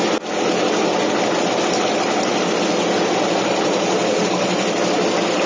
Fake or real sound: real